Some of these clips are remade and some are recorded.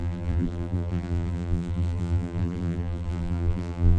remade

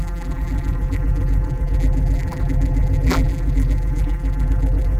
remade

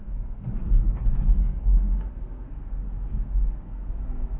remade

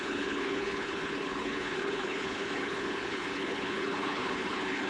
remade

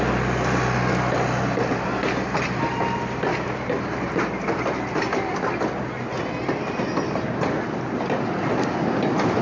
recorded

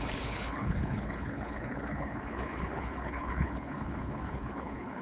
remade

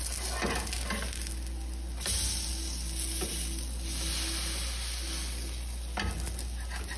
recorded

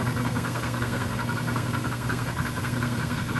remade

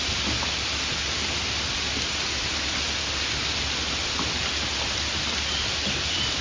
recorded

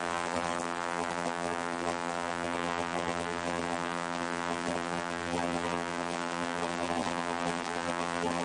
remade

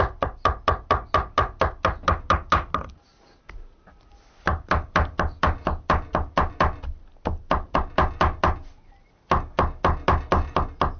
recorded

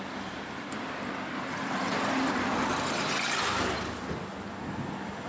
recorded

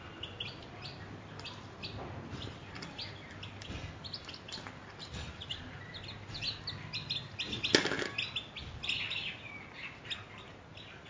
recorded